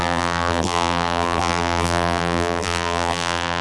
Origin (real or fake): fake